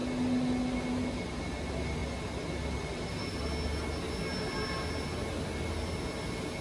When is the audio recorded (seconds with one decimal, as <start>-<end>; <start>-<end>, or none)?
0.0-6.6